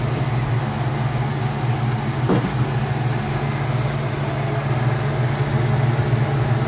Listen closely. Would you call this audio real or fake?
real